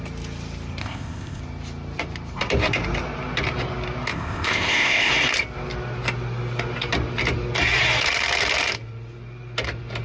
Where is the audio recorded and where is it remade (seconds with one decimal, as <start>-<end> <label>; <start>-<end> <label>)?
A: 0.0-0.8 recorded; 0.8-1.4 remade; 1.4-4.1 recorded; 4.1-5.1 remade; 5.1-10.0 recorded